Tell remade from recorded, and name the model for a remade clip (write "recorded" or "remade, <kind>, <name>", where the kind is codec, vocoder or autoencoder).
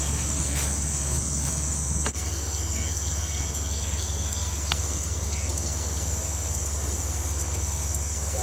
remade, codec, SNAC